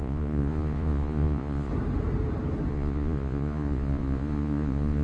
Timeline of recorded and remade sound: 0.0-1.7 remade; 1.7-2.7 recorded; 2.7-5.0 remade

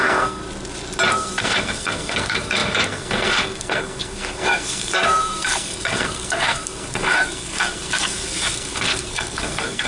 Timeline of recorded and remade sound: 0.0-0.4 remade; 0.4-1.1 recorded; 1.1-9.9 remade